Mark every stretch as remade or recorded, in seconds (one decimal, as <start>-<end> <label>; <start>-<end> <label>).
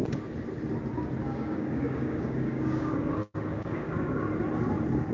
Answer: 0.0-1.2 recorded; 1.2-4.3 remade; 4.3-5.1 recorded